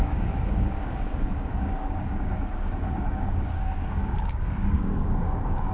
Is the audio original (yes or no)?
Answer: no